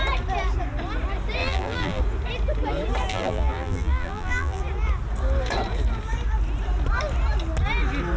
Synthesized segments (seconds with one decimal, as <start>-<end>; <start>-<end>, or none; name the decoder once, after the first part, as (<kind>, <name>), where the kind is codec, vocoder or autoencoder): 1.4-2.0 (vocoder, BigVGAN v2); 3.1-4.6